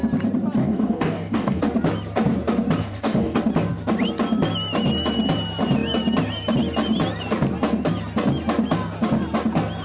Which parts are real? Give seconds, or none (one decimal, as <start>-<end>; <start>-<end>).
0.0-0.6; 1.6-2.8; 3.4-9.8